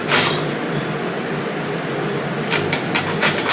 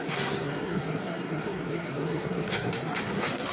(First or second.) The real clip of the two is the first